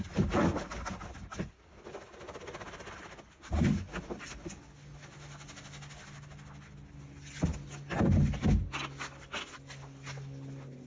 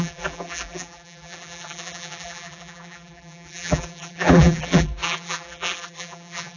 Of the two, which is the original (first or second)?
first